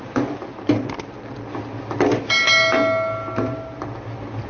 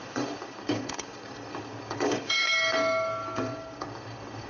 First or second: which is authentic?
first